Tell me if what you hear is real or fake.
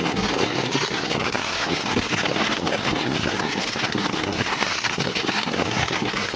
fake